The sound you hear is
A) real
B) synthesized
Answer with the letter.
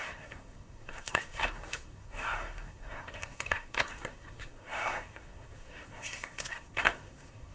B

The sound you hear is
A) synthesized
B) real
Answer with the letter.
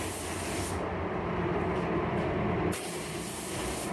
A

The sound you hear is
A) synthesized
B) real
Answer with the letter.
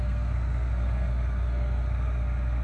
A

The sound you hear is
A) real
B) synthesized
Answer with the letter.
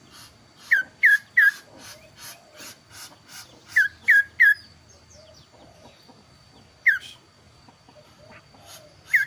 A